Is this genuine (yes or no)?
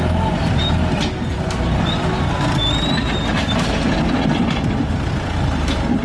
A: yes